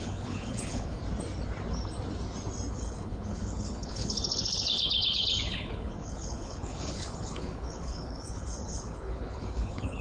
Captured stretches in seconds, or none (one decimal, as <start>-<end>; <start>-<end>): 1.0-2.7